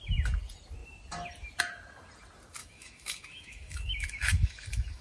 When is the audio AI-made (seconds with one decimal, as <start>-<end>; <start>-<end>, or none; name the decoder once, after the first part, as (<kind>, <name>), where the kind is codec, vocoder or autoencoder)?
2.6-5.0 (autoencoder, DAC-VAE)